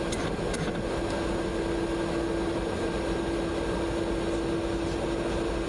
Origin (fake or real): real